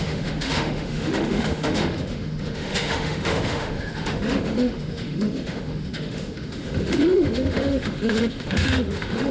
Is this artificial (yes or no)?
yes